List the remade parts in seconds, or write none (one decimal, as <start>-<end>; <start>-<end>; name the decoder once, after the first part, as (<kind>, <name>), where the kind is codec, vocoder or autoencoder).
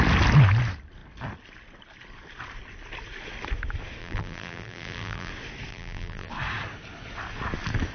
4.0-5.3 (vocoder, BigVGAN v2); 5.7-6.3